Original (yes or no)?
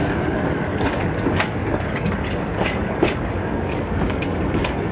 no